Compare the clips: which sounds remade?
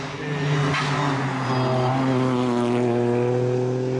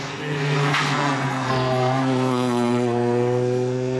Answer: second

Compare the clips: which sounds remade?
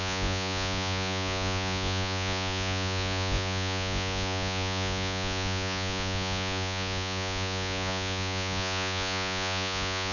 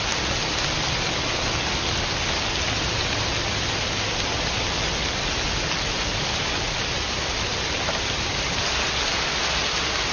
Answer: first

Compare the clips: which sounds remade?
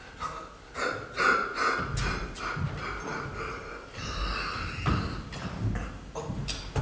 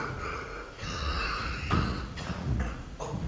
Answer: second